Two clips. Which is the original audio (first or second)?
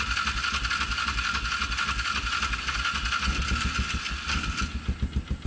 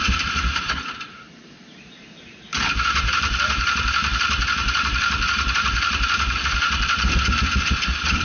first